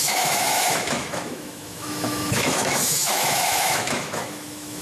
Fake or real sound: fake